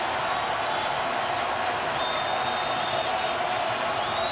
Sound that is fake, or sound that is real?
real